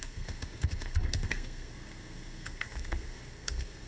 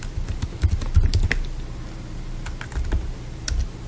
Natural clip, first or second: second